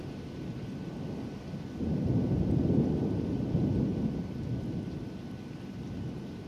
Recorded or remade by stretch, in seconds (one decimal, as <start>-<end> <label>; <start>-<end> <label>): 0.0-6.5 recorded